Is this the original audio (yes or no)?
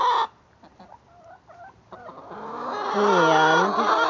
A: yes